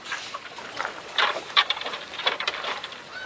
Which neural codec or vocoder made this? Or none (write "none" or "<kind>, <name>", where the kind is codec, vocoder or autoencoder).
vocoder, BigVGAN v2